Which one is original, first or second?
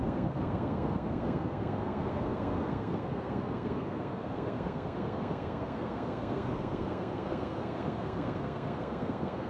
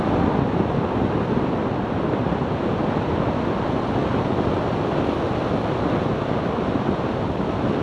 second